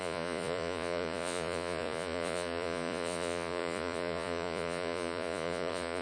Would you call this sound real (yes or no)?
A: no